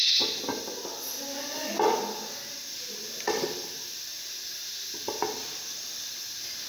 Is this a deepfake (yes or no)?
no